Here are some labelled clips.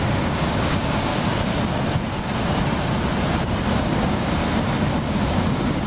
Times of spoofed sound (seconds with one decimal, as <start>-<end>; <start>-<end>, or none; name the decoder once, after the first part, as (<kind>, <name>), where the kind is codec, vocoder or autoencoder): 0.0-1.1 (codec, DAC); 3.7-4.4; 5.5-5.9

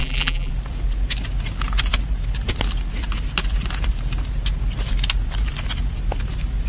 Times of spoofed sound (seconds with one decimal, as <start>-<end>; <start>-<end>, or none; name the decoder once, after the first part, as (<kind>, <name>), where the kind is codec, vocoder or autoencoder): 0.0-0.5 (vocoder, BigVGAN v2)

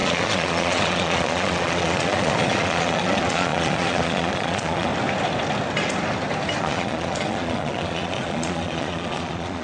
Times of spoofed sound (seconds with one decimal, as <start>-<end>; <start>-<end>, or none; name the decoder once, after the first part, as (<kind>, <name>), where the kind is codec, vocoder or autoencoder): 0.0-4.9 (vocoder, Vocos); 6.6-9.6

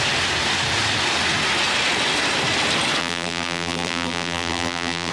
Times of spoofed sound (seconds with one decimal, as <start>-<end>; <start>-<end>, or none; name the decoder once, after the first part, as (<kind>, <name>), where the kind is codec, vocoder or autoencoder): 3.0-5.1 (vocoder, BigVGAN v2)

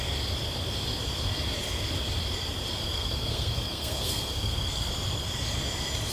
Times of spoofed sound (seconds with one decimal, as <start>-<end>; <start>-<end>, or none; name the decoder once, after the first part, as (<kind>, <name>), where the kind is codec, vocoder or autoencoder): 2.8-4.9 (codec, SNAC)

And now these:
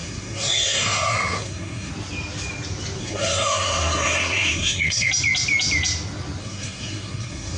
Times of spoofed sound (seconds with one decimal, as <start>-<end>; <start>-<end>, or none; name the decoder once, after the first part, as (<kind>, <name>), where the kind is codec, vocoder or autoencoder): 0.0-1.9 (codec, SNAC); 3.0-5.1; 6.4-7.6